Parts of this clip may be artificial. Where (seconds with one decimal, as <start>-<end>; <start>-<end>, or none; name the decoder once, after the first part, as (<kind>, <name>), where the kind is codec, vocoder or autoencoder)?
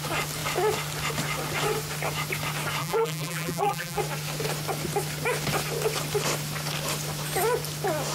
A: 2.8-4.0 (vocoder, BigVGAN v2)